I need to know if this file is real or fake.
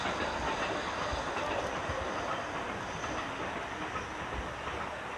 real